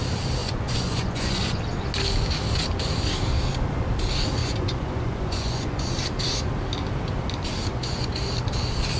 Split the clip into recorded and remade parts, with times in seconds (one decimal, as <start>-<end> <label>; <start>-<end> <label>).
0.0-0.4 recorded; 0.4-1.6 remade; 1.6-4.4 recorded; 4.4-5.9 remade; 5.9-7.7 recorded; 7.7-8.2 remade; 8.2-9.0 recorded